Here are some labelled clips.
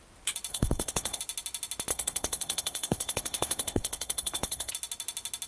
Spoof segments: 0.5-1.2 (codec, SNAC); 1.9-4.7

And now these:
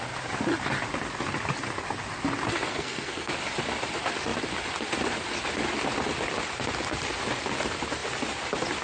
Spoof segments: 2.7-3.3 (codec, SNAC)